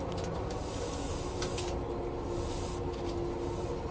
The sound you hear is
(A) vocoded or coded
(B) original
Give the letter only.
B